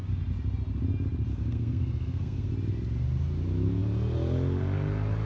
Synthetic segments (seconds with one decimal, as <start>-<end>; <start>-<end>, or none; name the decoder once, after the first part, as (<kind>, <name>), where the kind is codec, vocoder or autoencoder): 1.3-2.5 (codec, SNAC)

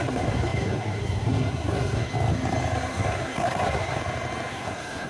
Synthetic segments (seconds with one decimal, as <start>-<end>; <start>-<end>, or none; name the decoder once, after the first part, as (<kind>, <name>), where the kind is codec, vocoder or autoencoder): 0.0-2.1 (codec, SNAC); 2.9-4.0; 4.5-5.1

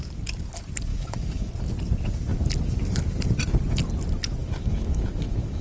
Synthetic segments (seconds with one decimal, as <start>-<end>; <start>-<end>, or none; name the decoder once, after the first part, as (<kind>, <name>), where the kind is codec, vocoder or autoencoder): 0.9-1.5 (autoencoder, DAC-VAE); 4.4-5.6